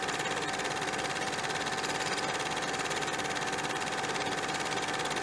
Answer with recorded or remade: recorded